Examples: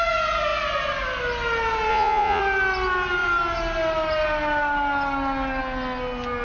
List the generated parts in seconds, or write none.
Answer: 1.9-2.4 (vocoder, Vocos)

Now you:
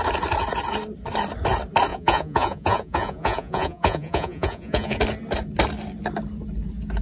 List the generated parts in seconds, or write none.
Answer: 1.9-5.0 (vocoder, Vocos)

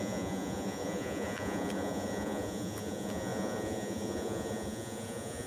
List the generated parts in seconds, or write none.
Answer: 0.0-5.5 (vocoder, Vocos)

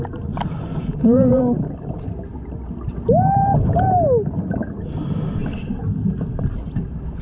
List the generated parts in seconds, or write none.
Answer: 0.7-1.4 (vocoder, Vocos)

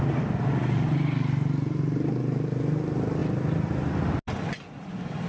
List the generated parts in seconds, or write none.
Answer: none

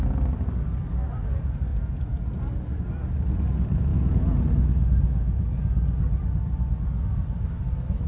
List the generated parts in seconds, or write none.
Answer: 1.7-2.3 (vocoder, Vocos); 3.9-4.5

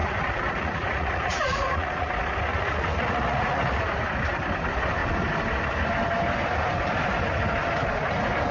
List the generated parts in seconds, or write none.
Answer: 0.0-2.1 (vocoder, Vocos); 2.5-3.8

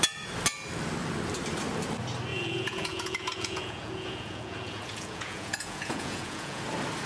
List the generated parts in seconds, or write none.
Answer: 2.3-6.6 (vocoder, Vocos)